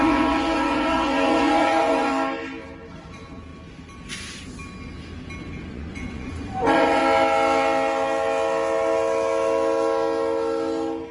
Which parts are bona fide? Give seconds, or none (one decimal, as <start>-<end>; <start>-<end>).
2.1-2.9; 3.5-5.7; 7.0-11.1